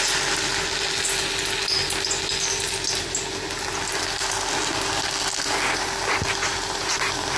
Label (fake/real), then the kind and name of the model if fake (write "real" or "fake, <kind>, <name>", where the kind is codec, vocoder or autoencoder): real